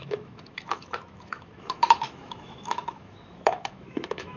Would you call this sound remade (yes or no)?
yes